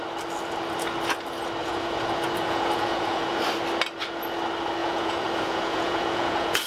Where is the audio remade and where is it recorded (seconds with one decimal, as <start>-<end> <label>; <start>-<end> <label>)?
0.0-1.6 recorded; 1.6-3.4 remade; 3.4-4.8 recorded; 4.8-6.7 remade